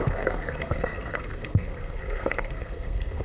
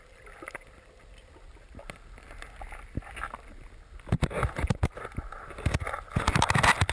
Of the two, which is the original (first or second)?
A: second